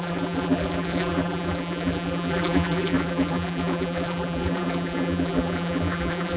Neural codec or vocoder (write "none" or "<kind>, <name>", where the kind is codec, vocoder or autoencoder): vocoder, BigVGAN v2